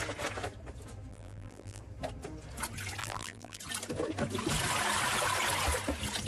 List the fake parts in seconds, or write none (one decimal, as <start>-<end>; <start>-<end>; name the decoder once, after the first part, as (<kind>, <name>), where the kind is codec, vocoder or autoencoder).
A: 1.1-1.8 (vocoder, BigVGAN v2); 3.0-3.6